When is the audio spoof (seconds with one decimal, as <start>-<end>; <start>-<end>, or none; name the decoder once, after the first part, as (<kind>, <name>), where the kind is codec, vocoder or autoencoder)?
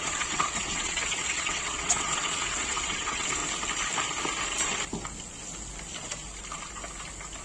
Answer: 0.0-3.4 (vocoder, WaveNeXt)